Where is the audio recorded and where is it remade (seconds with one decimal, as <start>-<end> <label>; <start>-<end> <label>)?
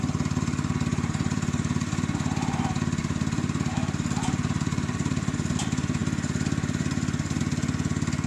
0.0-0.9 recorded; 0.9-2.0 remade; 2.0-3.0 recorded; 3.0-5.5 remade; 5.5-8.3 recorded